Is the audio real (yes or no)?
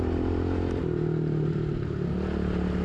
yes